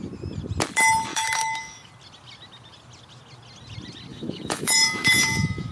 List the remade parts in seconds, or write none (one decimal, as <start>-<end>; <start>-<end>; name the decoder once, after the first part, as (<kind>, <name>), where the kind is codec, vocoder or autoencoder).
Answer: 1.1-1.9 (autoencoder, DAC-VAE); 4.1-5.7